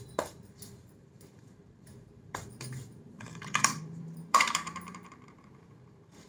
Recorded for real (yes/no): no